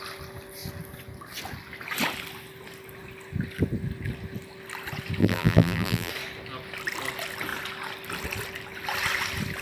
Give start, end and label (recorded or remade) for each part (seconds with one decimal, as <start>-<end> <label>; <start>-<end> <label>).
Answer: 0.0-5.2 recorded; 5.2-6.1 remade; 6.1-9.6 recorded